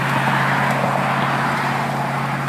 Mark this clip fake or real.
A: real